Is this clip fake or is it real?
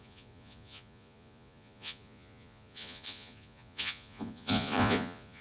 fake